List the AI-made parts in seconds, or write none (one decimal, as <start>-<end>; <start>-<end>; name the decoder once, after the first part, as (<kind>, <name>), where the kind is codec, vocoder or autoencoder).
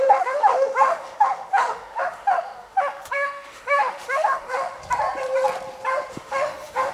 0.0-4.8 (autoencoder, DAC-VAE); 6.1-6.9